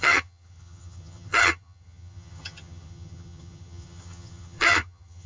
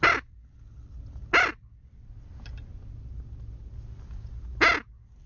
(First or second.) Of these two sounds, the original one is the second